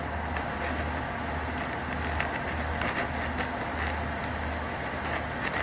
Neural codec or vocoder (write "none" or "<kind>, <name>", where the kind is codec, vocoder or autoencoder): none